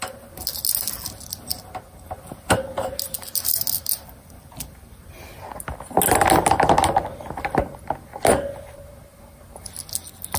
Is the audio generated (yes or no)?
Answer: no